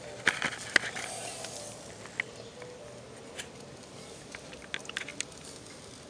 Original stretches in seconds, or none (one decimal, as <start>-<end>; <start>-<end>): 0.0-6.1